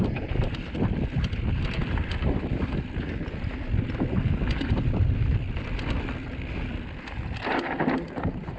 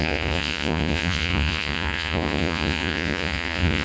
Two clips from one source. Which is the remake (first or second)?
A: second